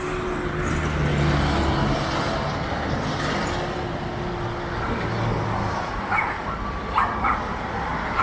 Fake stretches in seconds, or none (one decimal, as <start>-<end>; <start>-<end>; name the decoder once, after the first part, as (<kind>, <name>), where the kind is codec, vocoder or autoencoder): none

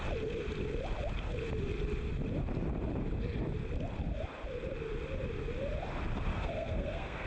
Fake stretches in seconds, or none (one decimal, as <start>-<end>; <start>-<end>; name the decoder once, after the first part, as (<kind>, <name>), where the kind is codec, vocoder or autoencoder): 6.3-7.3 (codec, SNAC)

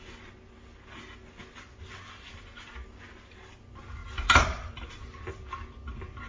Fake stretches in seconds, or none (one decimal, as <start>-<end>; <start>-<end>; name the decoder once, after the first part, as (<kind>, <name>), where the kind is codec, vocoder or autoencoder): none

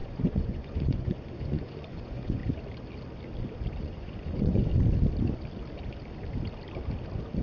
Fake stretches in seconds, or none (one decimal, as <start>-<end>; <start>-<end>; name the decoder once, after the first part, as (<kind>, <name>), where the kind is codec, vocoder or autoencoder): 0.0-2.4 (vocoder, Vocos); 3.8-4.7